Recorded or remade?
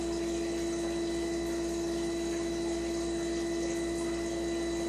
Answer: recorded